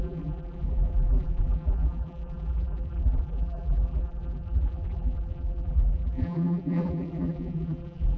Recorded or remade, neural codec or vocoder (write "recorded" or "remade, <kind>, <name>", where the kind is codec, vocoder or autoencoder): remade, vocoder, BigVGAN v2